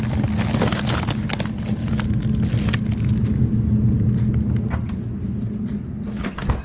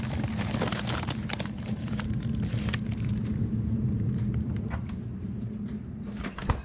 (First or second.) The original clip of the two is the first